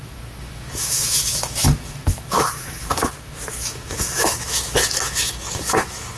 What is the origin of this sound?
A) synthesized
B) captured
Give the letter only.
A